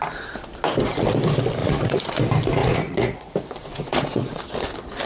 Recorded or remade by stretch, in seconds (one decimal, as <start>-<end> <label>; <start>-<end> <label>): 0.0-1.6 recorded; 1.6-2.1 remade; 2.1-2.6 recorded; 2.6-4.4 remade; 4.4-5.1 recorded